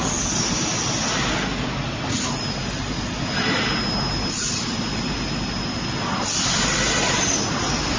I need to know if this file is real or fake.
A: real